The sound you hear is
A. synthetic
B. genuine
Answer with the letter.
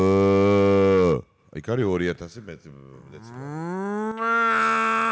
B